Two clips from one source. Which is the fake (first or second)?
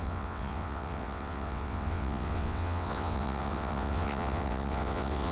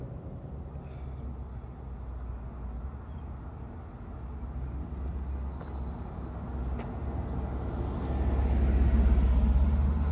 first